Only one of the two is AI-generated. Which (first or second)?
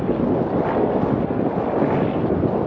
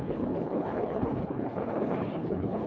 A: second